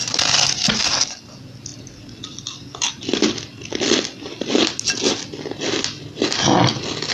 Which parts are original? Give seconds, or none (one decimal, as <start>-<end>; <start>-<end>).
0.8-7.1